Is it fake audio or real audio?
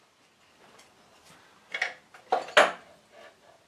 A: real